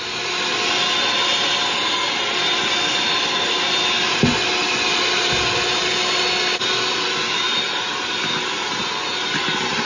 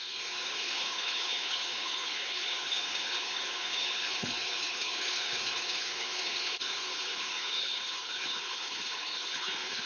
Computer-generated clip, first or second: second